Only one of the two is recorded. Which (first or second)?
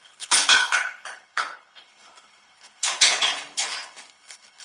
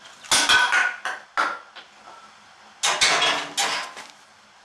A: second